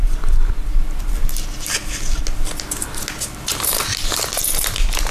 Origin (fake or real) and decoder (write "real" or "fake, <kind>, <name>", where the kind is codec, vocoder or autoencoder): real